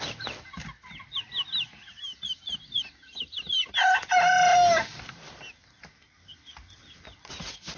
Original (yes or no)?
yes